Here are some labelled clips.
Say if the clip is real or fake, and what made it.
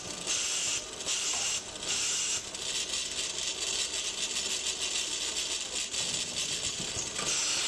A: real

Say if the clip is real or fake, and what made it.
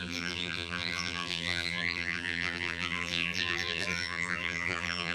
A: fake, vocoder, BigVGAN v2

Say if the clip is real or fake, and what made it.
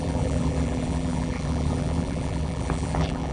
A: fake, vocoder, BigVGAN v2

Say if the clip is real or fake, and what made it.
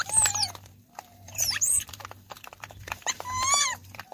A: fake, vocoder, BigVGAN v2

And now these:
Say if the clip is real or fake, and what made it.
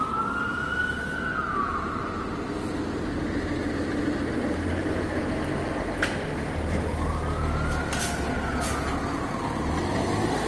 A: real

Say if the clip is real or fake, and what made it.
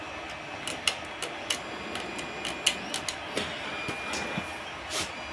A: real